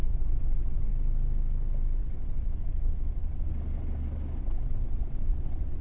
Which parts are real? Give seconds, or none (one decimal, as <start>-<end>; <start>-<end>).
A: 0.9-2.0; 3.5-4.4